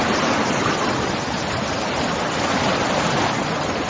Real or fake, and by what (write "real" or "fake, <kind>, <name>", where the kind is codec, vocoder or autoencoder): real